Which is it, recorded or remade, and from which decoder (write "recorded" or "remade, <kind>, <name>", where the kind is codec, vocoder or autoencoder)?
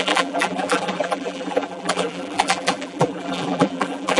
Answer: remade, vocoder, BigVGAN v2